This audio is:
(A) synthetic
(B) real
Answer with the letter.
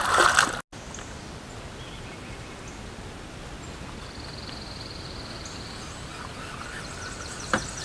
B